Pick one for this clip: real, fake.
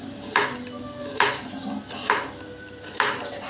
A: real